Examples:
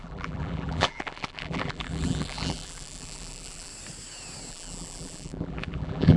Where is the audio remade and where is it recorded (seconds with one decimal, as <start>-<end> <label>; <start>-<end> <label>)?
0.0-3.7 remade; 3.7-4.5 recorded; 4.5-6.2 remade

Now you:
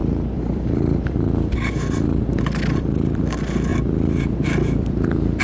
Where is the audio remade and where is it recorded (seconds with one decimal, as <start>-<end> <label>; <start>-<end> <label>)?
0.0-3.2 remade; 3.2-3.7 recorded; 3.7-5.4 remade

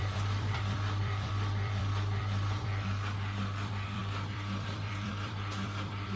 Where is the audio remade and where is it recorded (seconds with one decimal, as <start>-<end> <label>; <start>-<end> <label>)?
0.0-6.2 remade

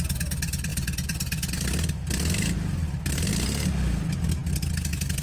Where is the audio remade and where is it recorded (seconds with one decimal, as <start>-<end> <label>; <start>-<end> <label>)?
0.0-5.2 recorded